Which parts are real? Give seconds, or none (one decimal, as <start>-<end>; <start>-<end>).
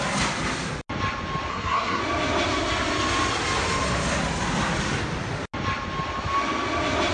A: 0.0-1.5; 2.0-7.1